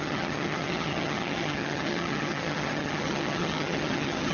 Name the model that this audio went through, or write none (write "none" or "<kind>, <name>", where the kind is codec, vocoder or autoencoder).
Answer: vocoder, HiFi-GAN